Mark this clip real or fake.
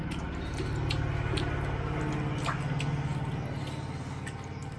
real